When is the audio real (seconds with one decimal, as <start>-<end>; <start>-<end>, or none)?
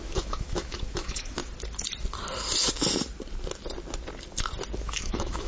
1.4-4.7